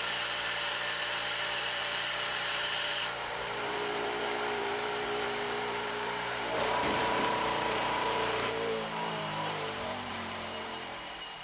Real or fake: fake